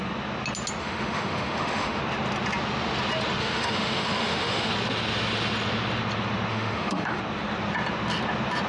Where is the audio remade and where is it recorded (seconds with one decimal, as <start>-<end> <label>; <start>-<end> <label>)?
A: 0.0-0.8 recorded; 0.8-2.0 remade; 2.0-3.4 recorded; 3.4-4.7 remade; 4.7-6.5 recorded; 6.5-7.2 remade; 7.2-8.7 recorded

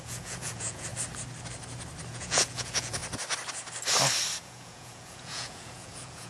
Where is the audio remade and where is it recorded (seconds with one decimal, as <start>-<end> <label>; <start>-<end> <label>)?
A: 0.0-0.9 remade; 0.9-2.1 recorded; 2.1-3.0 remade; 3.0-4.4 recorded; 4.4-6.3 remade